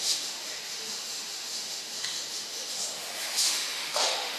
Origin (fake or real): fake